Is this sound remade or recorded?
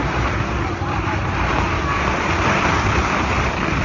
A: recorded